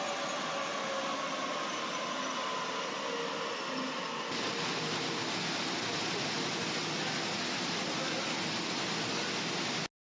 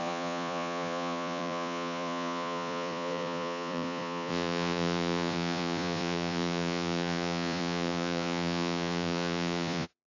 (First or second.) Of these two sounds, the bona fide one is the first